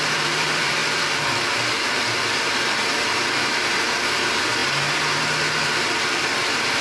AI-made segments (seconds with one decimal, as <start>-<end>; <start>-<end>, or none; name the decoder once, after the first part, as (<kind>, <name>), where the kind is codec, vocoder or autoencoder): 0.0-6.8 (vocoder, BigVGAN v2)